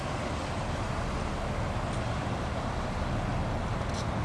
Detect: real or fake real